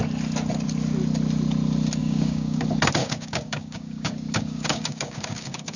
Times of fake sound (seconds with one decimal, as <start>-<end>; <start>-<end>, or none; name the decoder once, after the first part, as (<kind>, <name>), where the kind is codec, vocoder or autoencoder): 2.0-2.6 (codec, DAC); 3.0-5.8